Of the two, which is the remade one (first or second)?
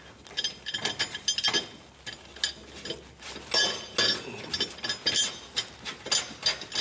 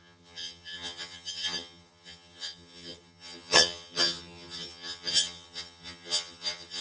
second